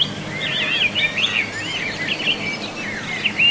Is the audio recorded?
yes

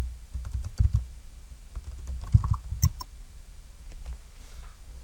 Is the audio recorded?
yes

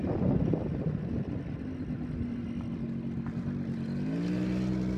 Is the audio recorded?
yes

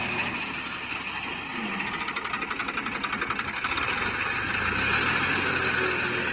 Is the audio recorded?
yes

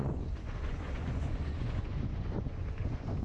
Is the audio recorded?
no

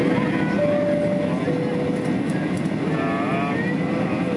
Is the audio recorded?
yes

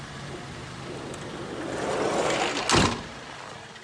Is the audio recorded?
yes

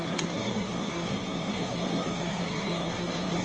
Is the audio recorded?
no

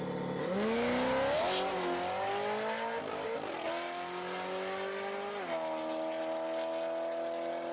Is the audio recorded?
yes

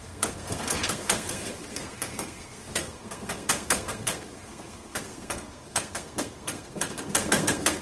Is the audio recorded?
no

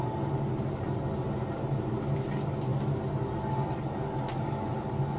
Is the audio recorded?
yes